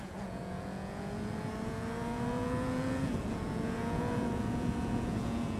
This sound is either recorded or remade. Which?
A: remade